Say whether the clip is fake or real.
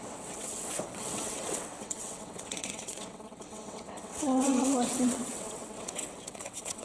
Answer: fake